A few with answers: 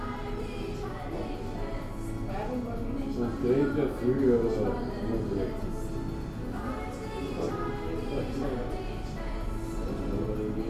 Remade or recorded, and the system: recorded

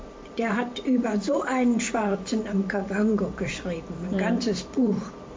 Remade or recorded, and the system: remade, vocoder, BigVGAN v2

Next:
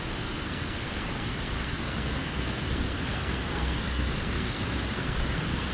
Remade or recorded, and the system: remade, codec, SNAC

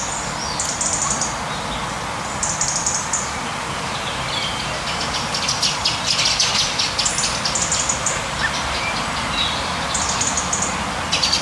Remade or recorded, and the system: recorded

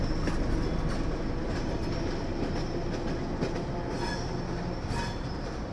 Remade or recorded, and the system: recorded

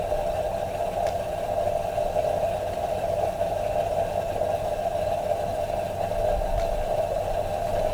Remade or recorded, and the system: recorded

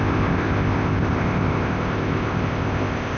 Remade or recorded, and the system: remade, codec, ZipCodec